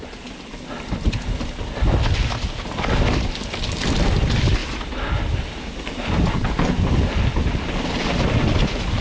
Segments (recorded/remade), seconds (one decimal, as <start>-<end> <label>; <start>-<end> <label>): 0.0-9.0 recorded